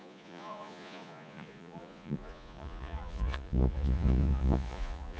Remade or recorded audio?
remade